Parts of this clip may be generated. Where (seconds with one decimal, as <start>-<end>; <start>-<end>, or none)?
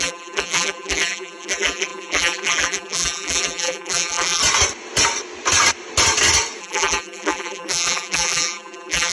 0.0-4.4; 6.6-9.1